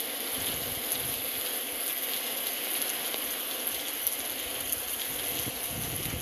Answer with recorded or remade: recorded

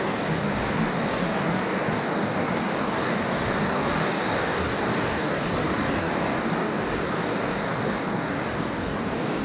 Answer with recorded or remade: remade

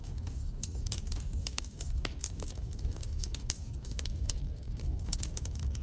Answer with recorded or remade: remade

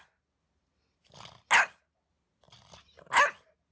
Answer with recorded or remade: recorded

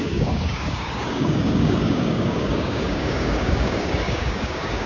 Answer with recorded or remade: remade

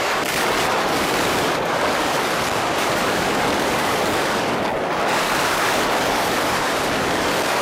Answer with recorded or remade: remade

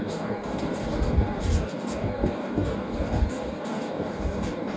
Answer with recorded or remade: remade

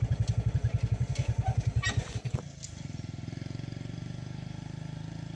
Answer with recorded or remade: recorded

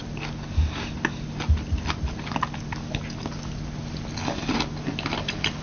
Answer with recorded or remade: recorded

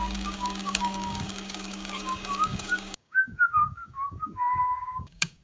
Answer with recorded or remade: remade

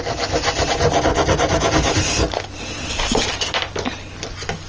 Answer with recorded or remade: recorded